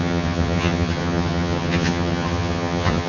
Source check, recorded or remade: remade